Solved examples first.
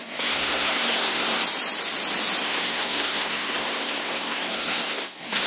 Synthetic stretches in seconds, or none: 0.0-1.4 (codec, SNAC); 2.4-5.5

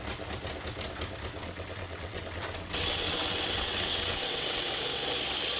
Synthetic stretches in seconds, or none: 1.4-4.8 (vocoder, WaveNeXt)

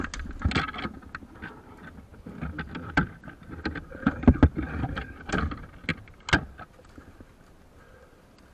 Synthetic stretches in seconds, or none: none

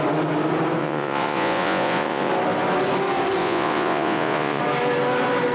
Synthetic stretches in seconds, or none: 0.8-2.3 (vocoder, Vocos); 3.4-4.6

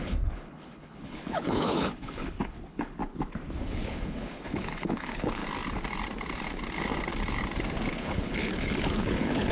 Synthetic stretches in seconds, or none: 0.0-3.0 (codec, HILCodec); 3.6-5.4; 7.9-9.5